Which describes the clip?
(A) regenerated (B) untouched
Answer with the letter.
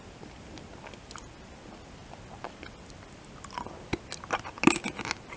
B